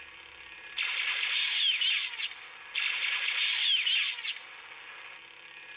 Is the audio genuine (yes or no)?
yes